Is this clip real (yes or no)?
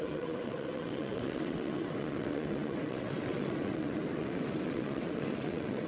no